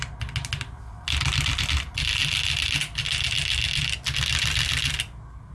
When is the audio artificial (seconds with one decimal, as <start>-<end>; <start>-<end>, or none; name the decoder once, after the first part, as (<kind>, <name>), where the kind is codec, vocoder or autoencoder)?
none